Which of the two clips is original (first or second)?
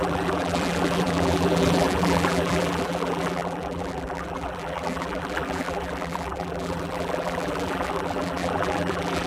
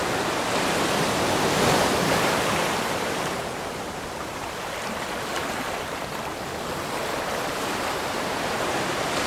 second